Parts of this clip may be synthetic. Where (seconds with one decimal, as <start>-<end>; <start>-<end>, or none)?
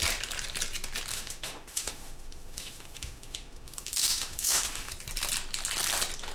1.1-4.9